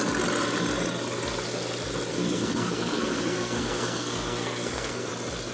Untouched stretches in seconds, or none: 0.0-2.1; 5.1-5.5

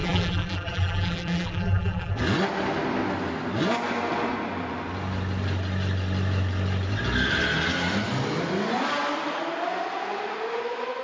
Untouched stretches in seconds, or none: 2.2-11.0

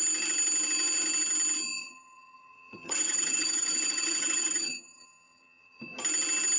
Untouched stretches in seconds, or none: 0.0-1.8; 5.8-6.6

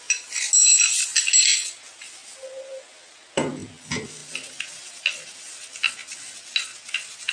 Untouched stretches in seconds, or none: 0.0-7.3